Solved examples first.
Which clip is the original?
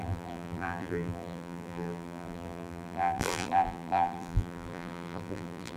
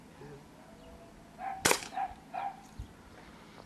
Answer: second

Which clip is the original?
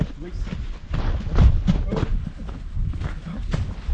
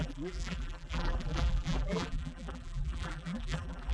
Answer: first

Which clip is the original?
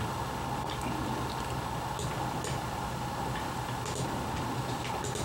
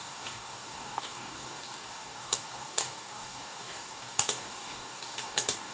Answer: first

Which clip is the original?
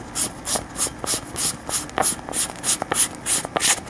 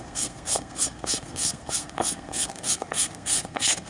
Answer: first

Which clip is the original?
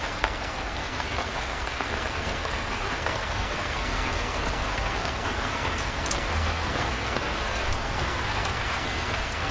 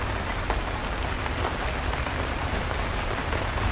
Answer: second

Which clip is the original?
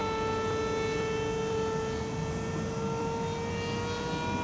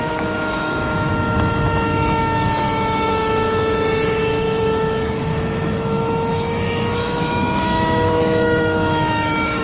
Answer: first